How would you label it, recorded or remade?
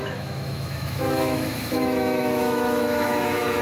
remade